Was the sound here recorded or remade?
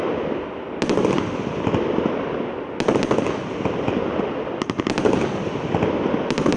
recorded